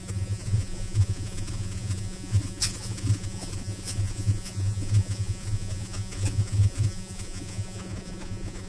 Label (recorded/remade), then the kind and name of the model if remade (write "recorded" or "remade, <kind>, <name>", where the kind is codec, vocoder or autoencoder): remade, vocoder, Vocos